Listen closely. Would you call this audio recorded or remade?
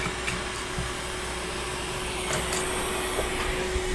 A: recorded